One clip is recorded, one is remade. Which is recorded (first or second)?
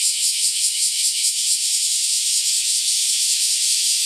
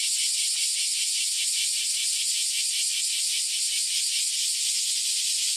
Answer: second